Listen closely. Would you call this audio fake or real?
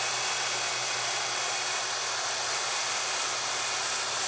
real